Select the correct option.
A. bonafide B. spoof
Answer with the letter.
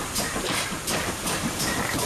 B